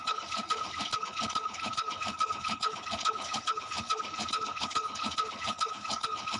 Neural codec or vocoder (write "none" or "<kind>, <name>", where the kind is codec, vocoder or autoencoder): codec, HILCodec